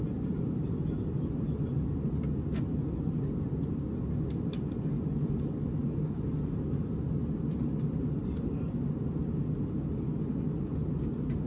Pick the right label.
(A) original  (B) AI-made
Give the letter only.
A